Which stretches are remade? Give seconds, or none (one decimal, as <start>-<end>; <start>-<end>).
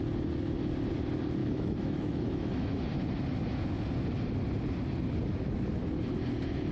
1.4-2.8